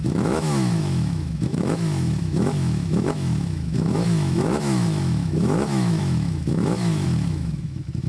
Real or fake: fake